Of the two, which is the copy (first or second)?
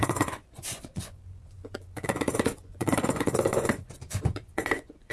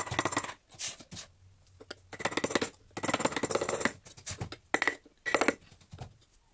first